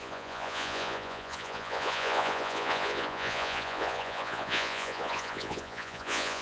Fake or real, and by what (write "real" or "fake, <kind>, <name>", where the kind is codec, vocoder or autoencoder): fake, vocoder, Vocos